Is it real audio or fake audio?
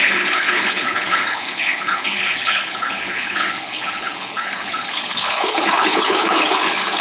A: fake